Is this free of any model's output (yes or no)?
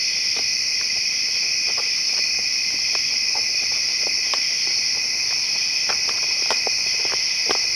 yes